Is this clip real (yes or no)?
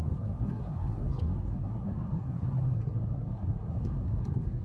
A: no